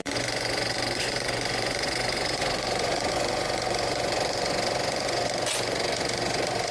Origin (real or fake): fake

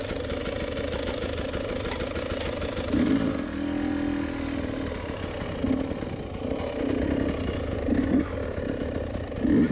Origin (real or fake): real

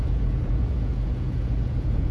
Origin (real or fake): fake